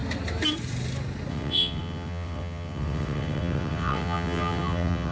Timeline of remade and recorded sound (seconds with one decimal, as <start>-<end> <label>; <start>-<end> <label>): 0.0-1.3 recorded; 1.3-5.1 remade